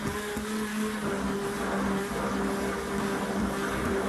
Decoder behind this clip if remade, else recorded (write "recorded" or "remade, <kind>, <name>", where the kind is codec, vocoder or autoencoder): recorded